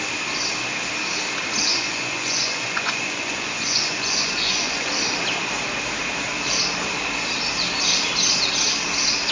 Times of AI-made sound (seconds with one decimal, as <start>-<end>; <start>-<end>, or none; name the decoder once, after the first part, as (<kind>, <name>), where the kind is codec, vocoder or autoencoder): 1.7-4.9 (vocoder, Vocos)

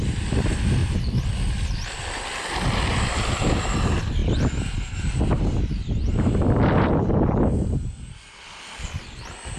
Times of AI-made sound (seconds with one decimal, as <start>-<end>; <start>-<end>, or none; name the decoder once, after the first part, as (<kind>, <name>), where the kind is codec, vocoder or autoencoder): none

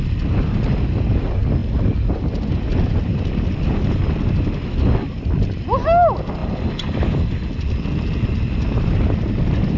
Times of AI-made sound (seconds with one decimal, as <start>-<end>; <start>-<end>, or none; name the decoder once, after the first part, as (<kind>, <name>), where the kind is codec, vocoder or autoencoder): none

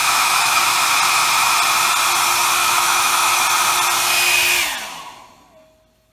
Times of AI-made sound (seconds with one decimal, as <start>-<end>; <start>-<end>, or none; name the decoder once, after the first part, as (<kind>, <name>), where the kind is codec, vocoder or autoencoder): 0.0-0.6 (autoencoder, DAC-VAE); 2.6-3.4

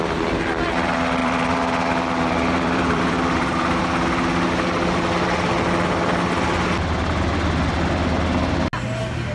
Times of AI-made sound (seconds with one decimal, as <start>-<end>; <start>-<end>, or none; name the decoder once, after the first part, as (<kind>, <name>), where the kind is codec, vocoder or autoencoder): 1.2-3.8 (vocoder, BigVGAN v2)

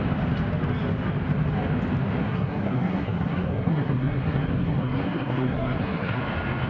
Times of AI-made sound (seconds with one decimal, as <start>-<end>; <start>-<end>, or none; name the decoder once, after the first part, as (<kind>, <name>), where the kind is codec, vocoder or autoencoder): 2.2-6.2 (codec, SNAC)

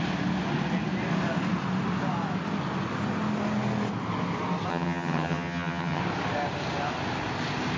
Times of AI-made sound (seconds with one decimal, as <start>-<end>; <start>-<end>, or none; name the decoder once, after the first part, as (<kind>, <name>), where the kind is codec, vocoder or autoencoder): 4.7-6.0 (vocoder, HiFi-GAN)

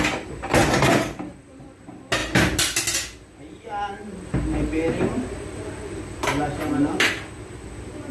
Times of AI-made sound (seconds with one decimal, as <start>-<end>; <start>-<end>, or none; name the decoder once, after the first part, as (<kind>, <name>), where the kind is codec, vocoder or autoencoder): 0.6-1.6 (vocoder, BigVGAN v2)